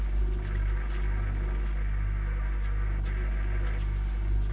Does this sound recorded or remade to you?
recorded